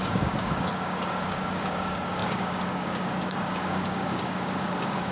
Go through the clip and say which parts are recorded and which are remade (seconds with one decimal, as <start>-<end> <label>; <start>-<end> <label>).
0.0-5.1 remade